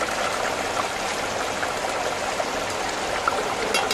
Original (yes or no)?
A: yes